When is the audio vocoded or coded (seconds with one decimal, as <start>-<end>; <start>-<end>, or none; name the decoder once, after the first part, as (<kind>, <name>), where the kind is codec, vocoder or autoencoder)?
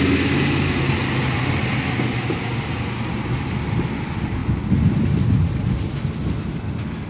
none